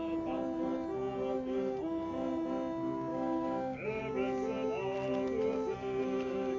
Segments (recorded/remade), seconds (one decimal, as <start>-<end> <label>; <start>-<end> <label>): 0.0-3.1 recorded; 3.1-4.0 remade; 4.0-6.6 recorded

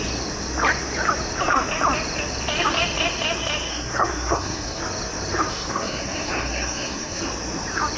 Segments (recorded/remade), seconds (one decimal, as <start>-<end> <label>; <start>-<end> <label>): 0.0-3.7 recorded; 3.7-4.8 remade; 4.8-5.5 recorded; 5.5-7.2 remade; 7.2-8.0 recorded

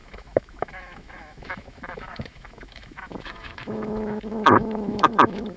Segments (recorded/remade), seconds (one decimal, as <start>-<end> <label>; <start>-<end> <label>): 0.0-5.6 remade